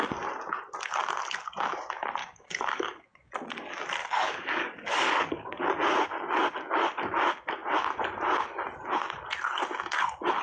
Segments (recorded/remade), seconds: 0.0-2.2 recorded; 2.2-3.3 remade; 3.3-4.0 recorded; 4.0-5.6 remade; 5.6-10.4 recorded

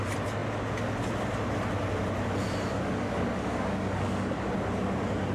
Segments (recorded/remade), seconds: 0.0-2.7 recorded; 2.7-4.5 remade; 4.5-5.3 recorded

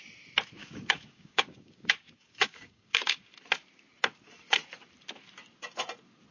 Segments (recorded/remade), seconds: 0.0-0.6 recorded; 0.6-3.4 remade; 3.4-6.3 recorded

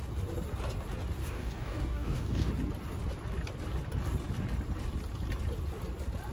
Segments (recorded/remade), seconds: 0.0-1.2 recorded; 1.2-2.5 remade; 2.5-6.3 recorded

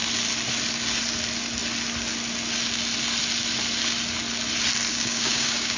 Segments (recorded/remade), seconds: 0.0-4.9 recorded; 4.9-5.8 remade